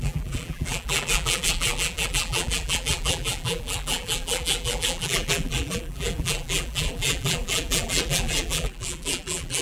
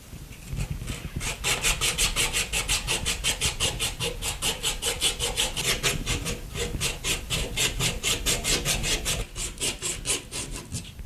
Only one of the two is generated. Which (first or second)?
first